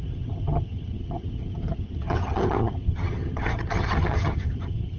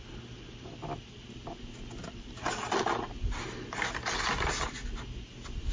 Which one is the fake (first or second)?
first